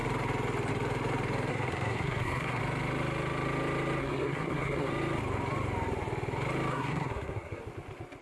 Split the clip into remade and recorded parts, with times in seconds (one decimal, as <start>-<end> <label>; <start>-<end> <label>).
0.0-1.5 recorded; 1.5-2.6 remade; 2.6-4.0 recorded; 4.0-4.9 remade; 4.9-6.7 recorded; 6.7-7.6 remade; 7.6-8.2 recorded